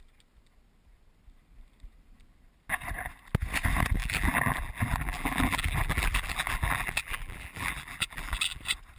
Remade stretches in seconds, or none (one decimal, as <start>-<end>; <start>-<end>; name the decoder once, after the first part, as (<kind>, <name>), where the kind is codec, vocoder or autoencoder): 4.0-8.6 (vocoder, BigVGAN v2)